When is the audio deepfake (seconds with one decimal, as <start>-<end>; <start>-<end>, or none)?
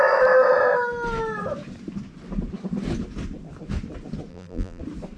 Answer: 4.3-4.8